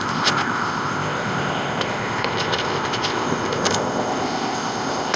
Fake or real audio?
fake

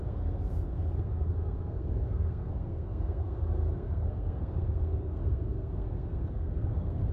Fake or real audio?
fake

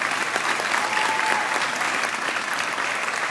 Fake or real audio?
real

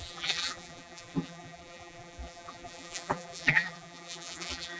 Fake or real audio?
fake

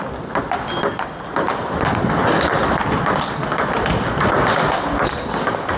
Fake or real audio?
real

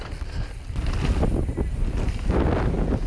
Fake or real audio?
real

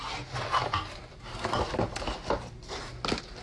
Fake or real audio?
real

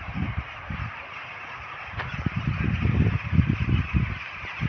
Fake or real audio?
real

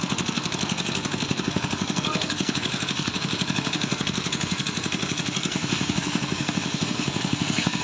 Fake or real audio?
fake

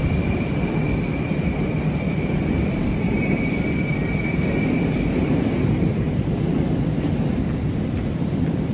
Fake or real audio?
fake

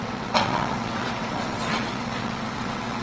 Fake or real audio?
fake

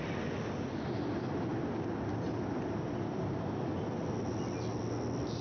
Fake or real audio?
real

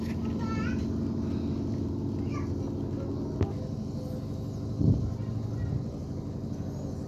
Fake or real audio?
real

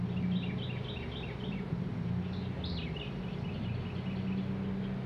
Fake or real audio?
real